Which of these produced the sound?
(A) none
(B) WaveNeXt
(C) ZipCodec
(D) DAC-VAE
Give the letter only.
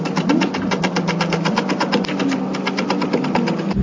A